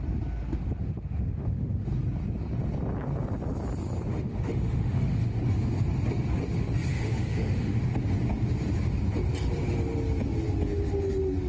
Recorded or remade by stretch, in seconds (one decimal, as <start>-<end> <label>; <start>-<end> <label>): 0.0-0.8 recorded; 0.8-1.9 remade; 1.9-4.1 recorded; 4.1-5.4 remade; 5.4-6.9 recorded; 6.9-7.8 remade; 7.8-11.5 recorded